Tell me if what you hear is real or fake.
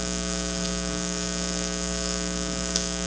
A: fake